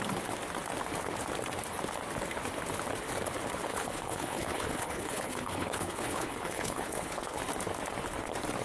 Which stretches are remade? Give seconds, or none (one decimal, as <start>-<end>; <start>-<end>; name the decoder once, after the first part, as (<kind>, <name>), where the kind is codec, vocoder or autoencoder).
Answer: 3.7-7.4 (codec, HILCodec)